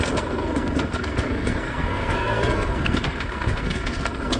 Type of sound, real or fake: fake